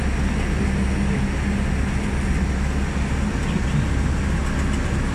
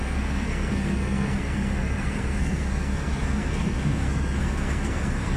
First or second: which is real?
first